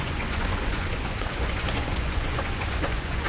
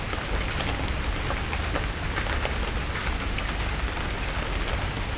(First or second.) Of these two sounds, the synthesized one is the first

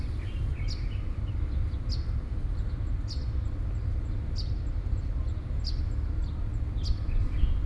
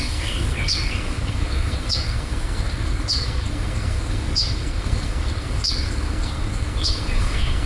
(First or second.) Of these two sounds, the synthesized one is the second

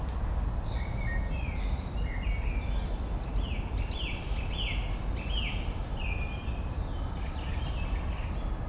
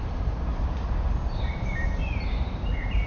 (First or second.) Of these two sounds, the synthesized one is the second